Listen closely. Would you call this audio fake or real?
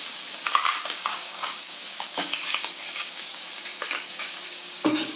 fake